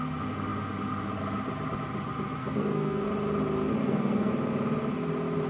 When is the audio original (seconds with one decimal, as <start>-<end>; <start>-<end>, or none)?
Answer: 0.0-2.4; 3.1-3.8; 4.3-5.5